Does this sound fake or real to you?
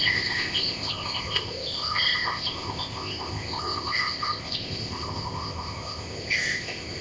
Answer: fake